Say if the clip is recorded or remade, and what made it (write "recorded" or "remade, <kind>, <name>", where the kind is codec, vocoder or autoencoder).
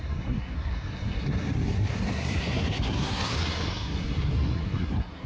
remade, codec, SNAC